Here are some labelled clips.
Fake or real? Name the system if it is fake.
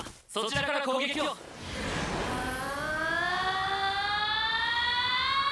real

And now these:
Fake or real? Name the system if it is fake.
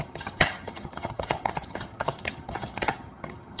fake, vocoder, HiFi-GAN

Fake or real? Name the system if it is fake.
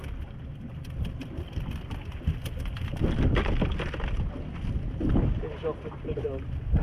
real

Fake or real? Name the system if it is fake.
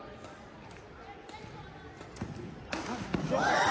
real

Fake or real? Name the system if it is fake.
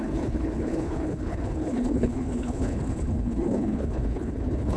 fake, codec, HILCodec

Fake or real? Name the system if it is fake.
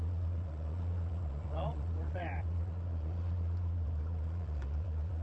fake, vocoder, Vocos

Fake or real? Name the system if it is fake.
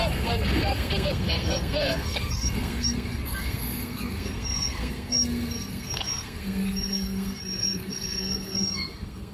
fake, codec, SNAC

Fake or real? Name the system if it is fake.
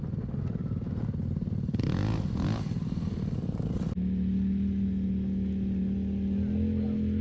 real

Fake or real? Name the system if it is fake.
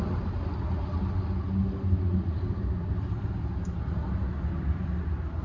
real